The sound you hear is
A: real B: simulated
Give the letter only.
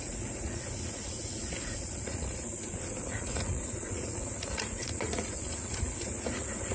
B